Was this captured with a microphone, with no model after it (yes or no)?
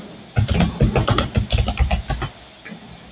yes